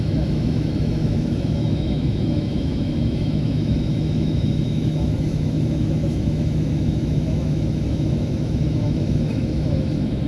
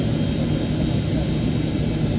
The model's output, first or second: first